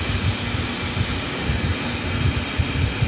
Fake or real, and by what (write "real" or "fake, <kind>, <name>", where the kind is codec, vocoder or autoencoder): real